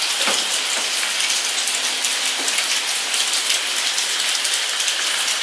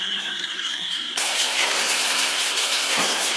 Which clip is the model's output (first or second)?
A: second